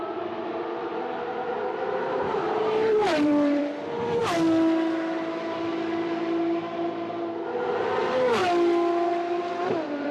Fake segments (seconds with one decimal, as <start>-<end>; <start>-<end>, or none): 0.0-4.2; 8.0-8.4; 9.6-10.1